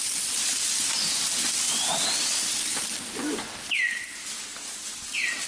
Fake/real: real